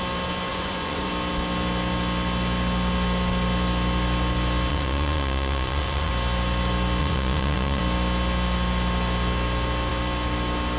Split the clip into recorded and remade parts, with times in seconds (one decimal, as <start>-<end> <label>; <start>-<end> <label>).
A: 0.0-0.5 recorded; 0.5-1.1 remade; 1.1-4.7 recorded; 4.7-6.1 remade; 6.1-7.0 recorded; 7.0-7.8 remade; 7.8-10.8 recorded

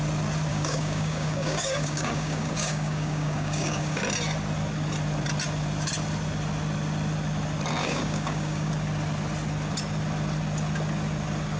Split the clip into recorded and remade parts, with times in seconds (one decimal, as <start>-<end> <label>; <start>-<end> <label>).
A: 0.0-0.5 recorded; 0.5-4.0 remade; 4.0-7.8 recorded; 7.8-8.7 remade; 8.7-11.6 recorded

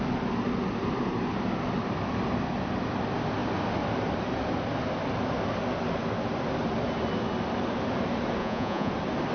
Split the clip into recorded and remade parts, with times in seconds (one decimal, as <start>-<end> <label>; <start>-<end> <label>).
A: 0.0-8.4 recorded; 8.4-8.9 remade; 8.9-9.3 recorded

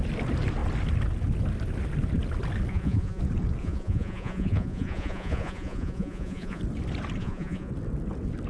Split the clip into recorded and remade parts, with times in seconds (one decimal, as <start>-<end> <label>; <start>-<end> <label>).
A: 0.0-2.7 recorded; 2.7-3.2 remade; 3.2-3.6 recorded; 3.6-6.6 remade; 6.6-7.2 recorded; 7.2-7.7 remade; 7.7-8.5 recorded

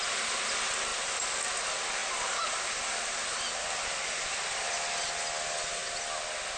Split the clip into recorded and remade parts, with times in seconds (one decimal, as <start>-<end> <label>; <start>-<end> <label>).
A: 0.0-2.0 recorded; 2.0-4.9 remade; 4.9-6.6 recorded

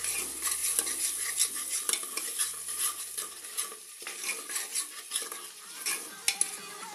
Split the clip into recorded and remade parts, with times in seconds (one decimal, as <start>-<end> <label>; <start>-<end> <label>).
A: 0.0-6.9 recorded